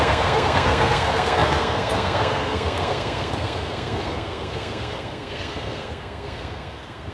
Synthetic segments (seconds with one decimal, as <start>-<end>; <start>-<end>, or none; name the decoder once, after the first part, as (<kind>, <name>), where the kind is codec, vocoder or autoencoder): 0.0-7.1 (codec, SNAC)